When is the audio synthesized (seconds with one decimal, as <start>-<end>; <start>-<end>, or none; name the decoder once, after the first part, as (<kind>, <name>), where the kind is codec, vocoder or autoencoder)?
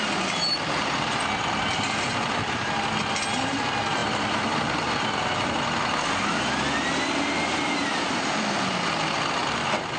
9.4-10.0 (vocoder, BigVGAN v2)